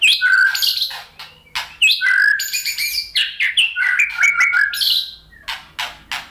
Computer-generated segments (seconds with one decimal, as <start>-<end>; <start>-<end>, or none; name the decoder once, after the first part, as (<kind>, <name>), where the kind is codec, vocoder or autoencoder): 2.3-3.5 (vocoder, BigVGAN v2)